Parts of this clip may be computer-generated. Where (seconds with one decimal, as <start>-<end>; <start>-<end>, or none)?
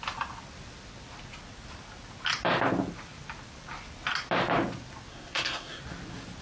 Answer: 5.1-5.8